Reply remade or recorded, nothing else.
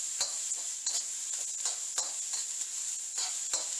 recorded